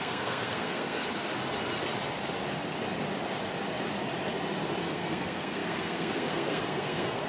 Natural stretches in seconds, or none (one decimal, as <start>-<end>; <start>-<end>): 1.0-4.8